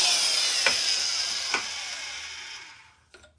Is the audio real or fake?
real